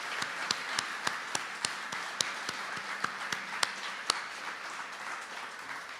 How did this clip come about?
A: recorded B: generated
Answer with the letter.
A